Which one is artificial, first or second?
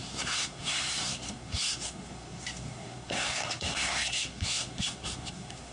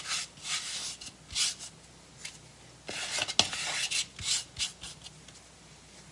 first